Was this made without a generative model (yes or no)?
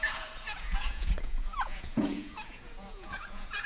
no